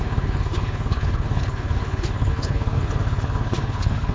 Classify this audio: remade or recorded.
remade